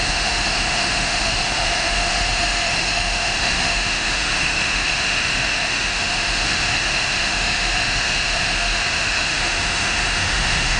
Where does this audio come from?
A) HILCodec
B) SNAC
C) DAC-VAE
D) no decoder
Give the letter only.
C